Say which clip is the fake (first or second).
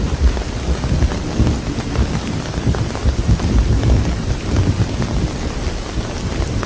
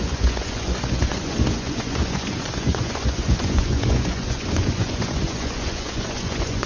second